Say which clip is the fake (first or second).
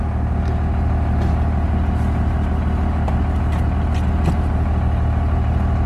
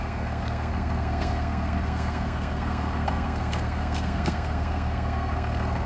second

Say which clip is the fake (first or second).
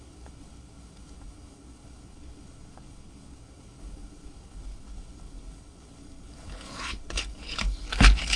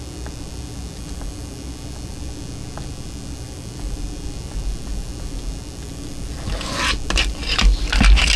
first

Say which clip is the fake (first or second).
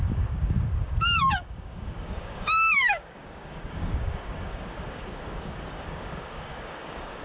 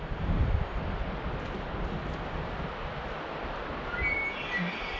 first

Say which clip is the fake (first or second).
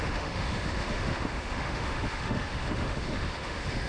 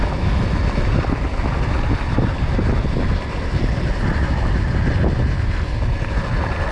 first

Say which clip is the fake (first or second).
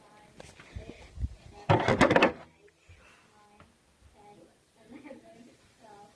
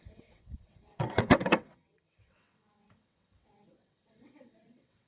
second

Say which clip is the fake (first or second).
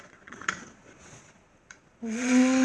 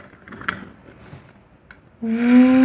first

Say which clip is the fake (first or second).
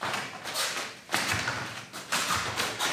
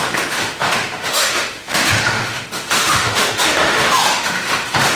second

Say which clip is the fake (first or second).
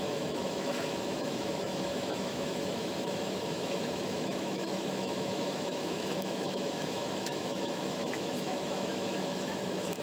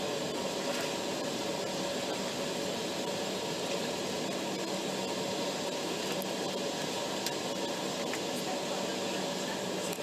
first